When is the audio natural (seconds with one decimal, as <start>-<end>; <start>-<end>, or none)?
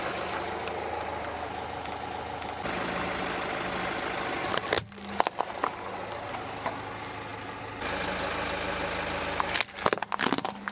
0.0-10.7